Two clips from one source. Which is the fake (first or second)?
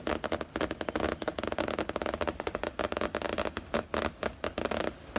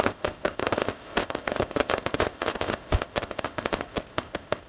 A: second